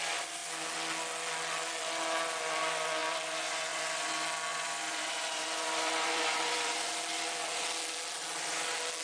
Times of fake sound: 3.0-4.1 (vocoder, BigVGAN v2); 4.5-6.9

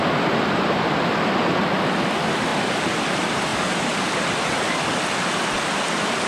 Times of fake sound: 3.5-4.7 (vocoder, BigVGAN v2)